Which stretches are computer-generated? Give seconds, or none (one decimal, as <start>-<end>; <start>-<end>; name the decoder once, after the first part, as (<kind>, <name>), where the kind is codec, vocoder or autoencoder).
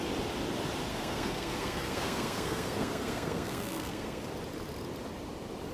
0.9-4.3 (codec, SNAC)